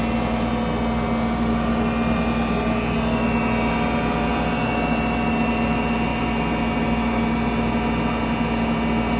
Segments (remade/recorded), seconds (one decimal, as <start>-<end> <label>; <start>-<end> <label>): 0.0-9.2 recorded